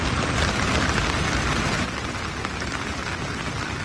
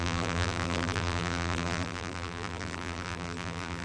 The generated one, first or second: second